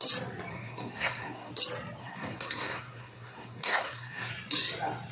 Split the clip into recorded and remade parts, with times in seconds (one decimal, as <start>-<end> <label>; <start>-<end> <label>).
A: 0.0-0.5 recorded; 0.5-1.5 remade; 1.5-2.0 recorded; 2.0-4.3 remade; 4.3-5.1 recorded